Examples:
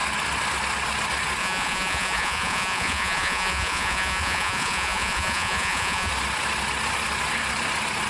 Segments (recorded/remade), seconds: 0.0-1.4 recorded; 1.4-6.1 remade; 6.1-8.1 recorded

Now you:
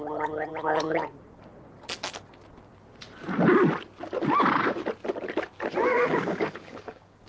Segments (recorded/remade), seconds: 0.0-5.9 recorded; 5.9-7.3 remade

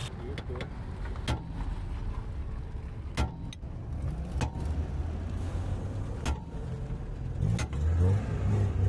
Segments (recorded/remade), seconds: 0.0-8.9 recorded